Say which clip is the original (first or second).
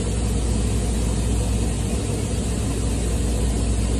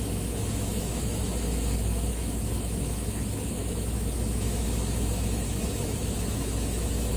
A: first